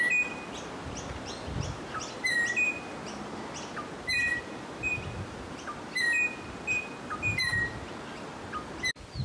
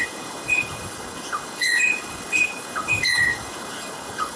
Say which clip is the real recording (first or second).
first